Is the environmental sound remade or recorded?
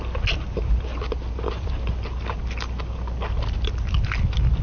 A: recorded